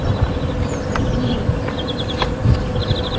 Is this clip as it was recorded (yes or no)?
no